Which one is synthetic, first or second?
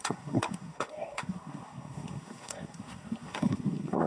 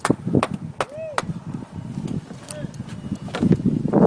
first